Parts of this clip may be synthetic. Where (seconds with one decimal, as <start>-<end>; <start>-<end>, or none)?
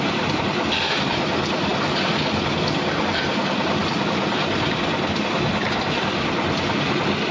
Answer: none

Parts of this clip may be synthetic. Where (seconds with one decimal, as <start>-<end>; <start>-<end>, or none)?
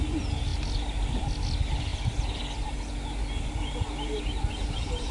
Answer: none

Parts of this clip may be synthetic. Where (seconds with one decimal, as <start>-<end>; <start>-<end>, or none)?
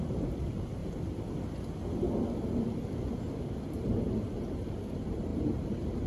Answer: 0.0-0.8; 3.7-6.1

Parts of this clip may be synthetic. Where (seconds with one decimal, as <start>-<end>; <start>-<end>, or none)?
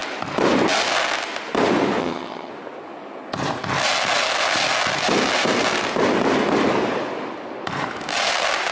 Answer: 2.0-2.5